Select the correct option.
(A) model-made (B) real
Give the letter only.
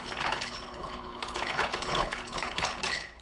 A